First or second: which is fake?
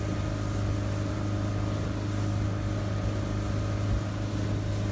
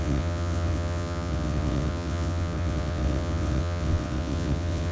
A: second